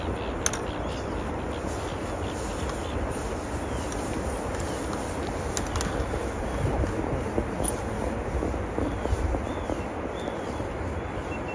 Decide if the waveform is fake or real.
real